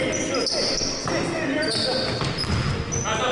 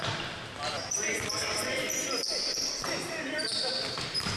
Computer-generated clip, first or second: second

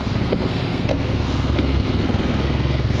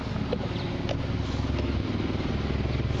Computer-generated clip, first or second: first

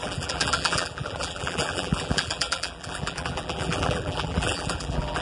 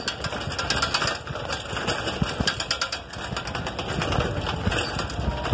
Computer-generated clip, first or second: first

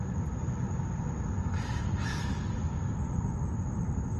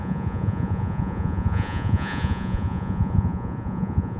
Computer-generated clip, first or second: second